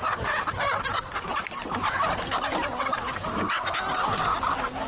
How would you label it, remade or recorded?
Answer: recorded